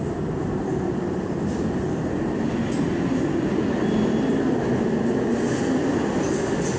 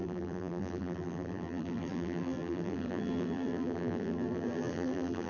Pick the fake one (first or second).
second